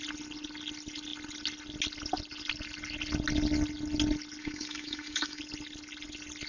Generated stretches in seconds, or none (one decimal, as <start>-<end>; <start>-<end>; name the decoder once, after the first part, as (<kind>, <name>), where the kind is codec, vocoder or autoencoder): 4.4-5.4 (autoencoder, DAC-VAE)